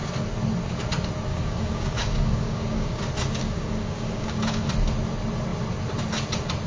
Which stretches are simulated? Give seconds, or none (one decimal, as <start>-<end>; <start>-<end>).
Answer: 1.3-3.0; 3.4-4.7